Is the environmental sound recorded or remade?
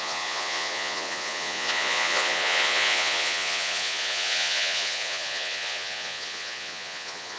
remade